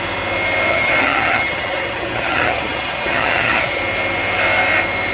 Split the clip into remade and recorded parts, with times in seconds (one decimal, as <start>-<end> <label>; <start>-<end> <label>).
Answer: 0.0-0.7 recorded; 0.7-3.8 remade; 3.8-5.1 recorded